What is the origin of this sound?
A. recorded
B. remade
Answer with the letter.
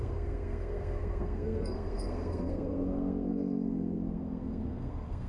B